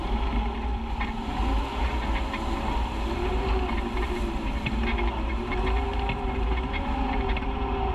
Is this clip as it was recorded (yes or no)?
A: no